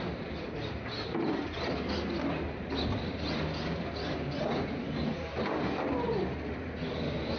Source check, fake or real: real